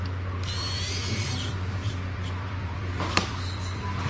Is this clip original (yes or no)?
no